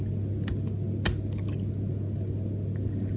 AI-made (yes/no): no